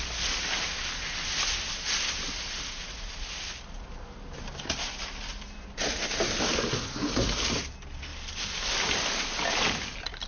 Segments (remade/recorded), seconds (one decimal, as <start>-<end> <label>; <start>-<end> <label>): 0.0-8.1 recorded; 8.1-8.7 remade; 8.7-10.3 recorded